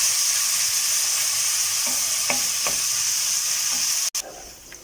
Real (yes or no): yes